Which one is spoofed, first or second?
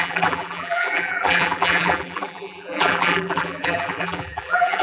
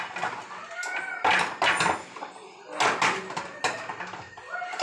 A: first